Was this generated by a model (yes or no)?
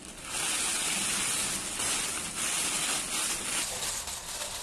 no